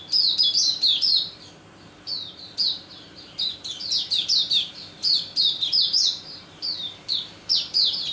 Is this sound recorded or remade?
remade